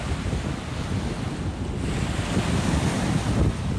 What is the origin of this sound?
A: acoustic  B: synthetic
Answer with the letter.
A